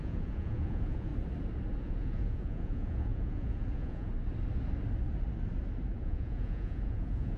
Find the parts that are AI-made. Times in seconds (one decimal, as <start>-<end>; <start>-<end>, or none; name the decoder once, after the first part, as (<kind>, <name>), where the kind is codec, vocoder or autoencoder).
0.0-1.1 (vocoder, Vocos); 1.8-4.1; 5.9-7.4